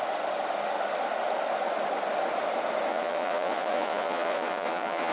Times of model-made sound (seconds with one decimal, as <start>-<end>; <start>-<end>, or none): 2.9-5.1